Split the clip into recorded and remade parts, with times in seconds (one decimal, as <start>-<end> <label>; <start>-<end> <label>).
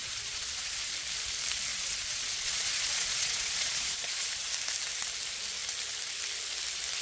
0.0-0.9 remade; 0.9-1.7 recorded; 1.7-4.5 remade; 4.5-7.0 recorded